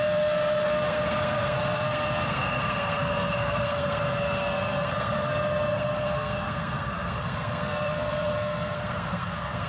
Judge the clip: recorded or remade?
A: remade